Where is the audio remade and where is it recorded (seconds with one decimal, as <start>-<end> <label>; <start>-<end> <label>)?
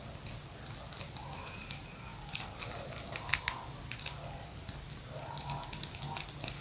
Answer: 0.0-6.6 recorded